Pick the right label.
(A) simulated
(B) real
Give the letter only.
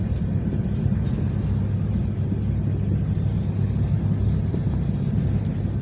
B